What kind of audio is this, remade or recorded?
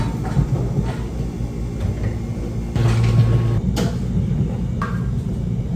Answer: recorded